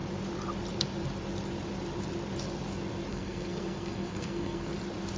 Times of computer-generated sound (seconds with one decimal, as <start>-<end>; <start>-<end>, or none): 3.1-4.8

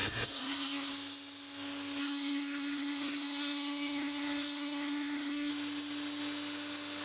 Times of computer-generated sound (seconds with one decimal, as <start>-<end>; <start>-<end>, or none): 0.0-0.9; 2.0-5.5

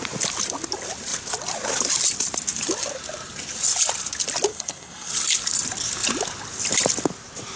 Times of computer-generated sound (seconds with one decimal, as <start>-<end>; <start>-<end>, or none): 4.5-5.1

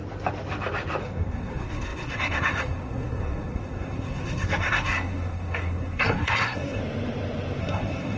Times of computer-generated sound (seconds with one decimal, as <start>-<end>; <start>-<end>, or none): 1.0-6.8; 7.6-8.2

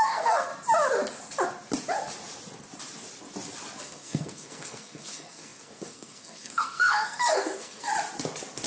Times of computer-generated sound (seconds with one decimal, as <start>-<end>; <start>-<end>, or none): 0.0-0.5; 3.8-7.9

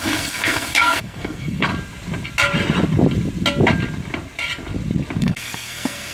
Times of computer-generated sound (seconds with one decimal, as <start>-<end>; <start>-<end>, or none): 0.0-1.7; 5.2-6.1

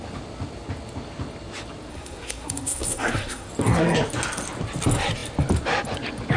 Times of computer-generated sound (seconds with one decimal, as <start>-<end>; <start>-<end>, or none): 1.9-3.5

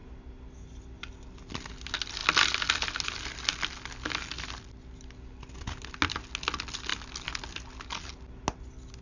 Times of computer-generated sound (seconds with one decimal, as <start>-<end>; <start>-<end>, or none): none